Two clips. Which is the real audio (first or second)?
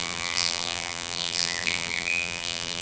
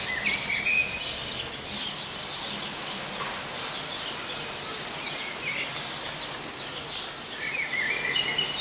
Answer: second